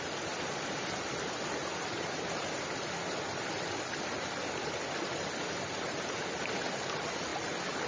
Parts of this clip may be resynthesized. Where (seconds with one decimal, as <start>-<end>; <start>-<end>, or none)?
none